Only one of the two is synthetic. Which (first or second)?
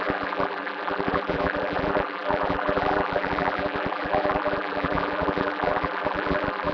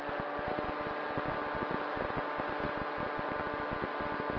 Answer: first